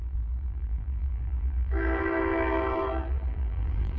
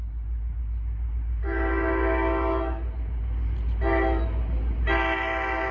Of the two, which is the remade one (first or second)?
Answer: first